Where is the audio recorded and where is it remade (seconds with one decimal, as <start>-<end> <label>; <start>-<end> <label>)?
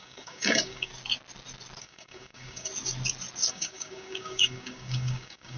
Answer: 0.0-0.9 remade; 0.9-1.8 recorded; 1.8-2.7 remade; 2.7-3.5 recorded; 3.5-5.6 remade